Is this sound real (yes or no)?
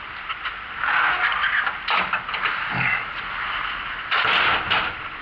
yes